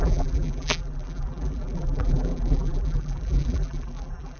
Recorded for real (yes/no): no